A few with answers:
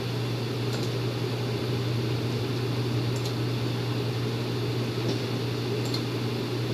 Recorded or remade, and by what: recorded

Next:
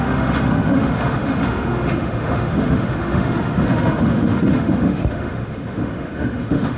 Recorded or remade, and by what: remade, autoencoder, DAC-VAE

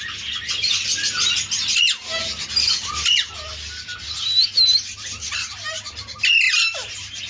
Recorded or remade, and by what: recorded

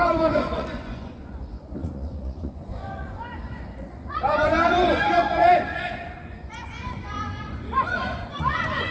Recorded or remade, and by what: remade, vocoder, Vocos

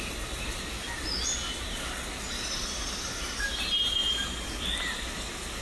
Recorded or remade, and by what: recorded